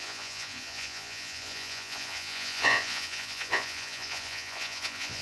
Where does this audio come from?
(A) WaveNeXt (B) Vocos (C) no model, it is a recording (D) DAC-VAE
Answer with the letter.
B